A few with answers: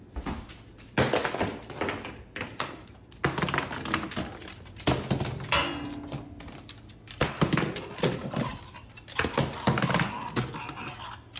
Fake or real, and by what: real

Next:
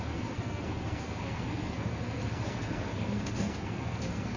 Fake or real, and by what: fake, codec, SNAC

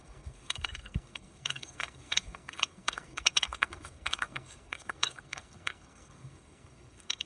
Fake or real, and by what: fake, codec, SNAC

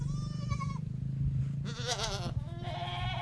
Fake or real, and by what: real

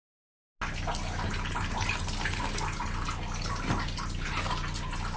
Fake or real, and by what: real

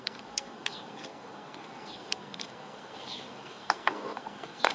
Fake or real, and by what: fake, codec, SNAC